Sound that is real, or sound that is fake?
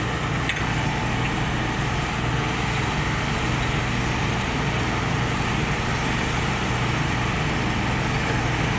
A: real